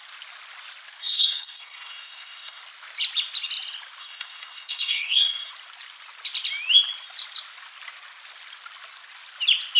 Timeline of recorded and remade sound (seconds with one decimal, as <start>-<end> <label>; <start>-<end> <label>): 0.0-1.0 recorded; 1.0-2.6 remade; 2.6-4.0 recorded; 4.0-5.5 remade; 5.5-9.8 recorded